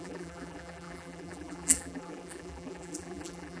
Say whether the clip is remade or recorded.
remade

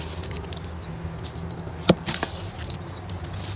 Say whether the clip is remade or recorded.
recorded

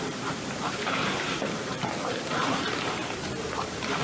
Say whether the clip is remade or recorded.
remade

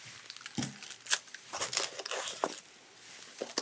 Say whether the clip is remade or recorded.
recorded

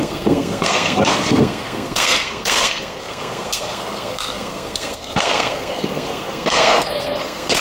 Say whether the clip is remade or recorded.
remade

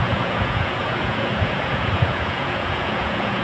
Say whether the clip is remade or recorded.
remade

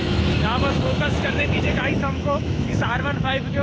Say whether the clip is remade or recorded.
remade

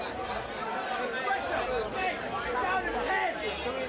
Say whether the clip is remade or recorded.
recorded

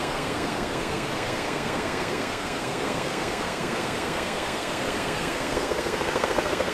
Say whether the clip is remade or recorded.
remade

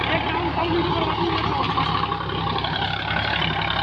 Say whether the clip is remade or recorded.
recorded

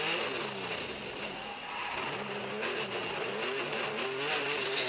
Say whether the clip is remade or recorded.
recorded